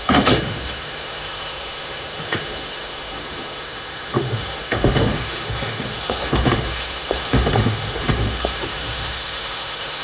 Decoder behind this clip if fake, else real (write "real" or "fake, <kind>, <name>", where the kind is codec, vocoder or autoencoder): fake, autoencoder, DAC-VAE